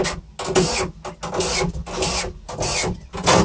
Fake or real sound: real